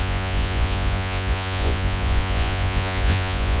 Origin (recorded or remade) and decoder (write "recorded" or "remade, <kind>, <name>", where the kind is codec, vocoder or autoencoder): remade, vocoder, Vocos